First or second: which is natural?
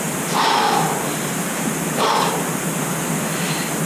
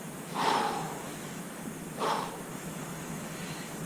first